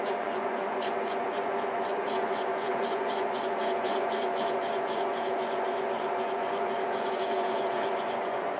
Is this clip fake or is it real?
fake